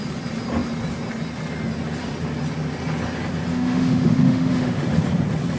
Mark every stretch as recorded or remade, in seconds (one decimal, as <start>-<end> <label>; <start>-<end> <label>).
0.0-3.5 recorded; 3.5-4.8 remade; 4.8-5.6 recorded